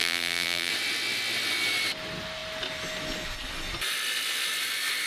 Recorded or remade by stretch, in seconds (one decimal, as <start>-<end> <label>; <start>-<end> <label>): 0.0-0.7 remade; 0.7-5.1 recorded